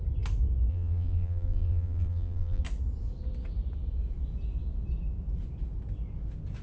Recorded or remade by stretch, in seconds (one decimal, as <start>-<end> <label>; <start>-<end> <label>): 0.0-0.7 recorded; 0.7-2.6 remade; 2.6-6.6 recorded